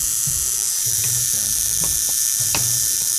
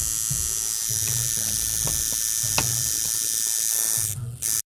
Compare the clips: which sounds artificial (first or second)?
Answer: first